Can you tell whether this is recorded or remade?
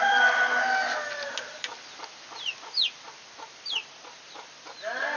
recorded